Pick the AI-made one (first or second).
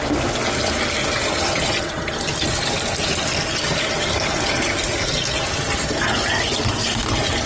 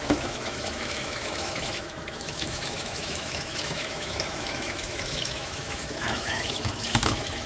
second